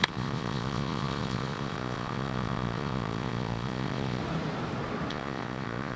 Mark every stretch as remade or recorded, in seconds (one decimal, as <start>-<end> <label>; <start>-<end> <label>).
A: 0.0-4.2 remade; 4.2-5.1 recorded; 5.1-6.0 remade